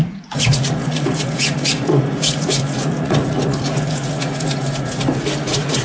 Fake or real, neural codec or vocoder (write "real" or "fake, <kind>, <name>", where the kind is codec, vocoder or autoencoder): fake, vocoder, Vocos